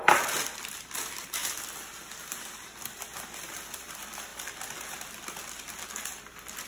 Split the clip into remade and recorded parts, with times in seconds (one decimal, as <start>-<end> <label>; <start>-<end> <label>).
0.0-1.4 remade; 1.4-2.3 recorded; 2.3-3.1 remade; 3.1-3.7 recorded; 3.7-4.3 remade; 4.3-6.2 recorded; 6.2-6.7 remade

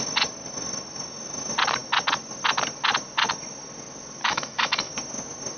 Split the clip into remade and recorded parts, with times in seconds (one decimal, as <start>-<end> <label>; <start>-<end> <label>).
0.0-4.2 recorded; 4.2-4.9 remade; 4.9-5.6 recorded

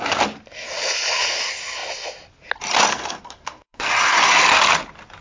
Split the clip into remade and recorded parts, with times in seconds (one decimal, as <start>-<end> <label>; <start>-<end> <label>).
0.0-2.9 recorded; 2.9-3.9 remade; 3.9-5.2 recorded